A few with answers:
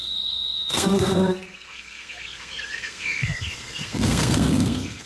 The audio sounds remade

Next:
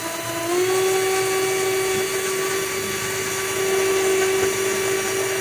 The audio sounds recorded